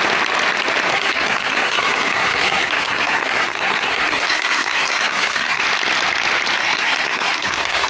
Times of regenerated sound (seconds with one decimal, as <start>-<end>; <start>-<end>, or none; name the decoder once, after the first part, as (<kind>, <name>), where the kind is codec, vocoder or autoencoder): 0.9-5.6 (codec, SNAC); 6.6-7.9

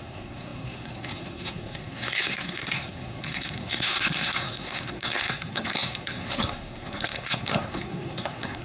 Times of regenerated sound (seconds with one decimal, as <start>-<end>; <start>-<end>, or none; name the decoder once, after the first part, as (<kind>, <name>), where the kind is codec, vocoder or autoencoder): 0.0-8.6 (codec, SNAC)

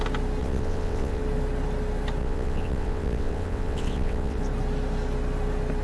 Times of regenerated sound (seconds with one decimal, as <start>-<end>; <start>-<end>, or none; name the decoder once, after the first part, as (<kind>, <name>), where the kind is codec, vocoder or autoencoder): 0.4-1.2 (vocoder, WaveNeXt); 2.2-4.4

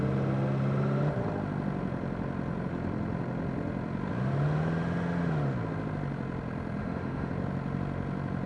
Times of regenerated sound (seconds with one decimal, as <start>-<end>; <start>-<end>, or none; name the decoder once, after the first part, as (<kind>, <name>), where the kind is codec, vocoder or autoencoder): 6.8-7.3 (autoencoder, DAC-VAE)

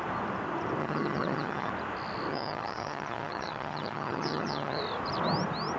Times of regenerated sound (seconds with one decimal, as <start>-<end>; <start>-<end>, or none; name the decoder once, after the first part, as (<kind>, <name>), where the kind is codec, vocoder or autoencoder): 0.8-1.7 (vocoder, HiFi-GAN); 2.3-4.8

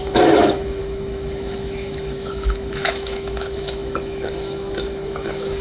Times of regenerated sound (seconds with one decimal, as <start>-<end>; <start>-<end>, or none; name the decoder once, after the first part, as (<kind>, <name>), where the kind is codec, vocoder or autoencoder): 0.0-5.6 (autoencoder, DAC-VAE)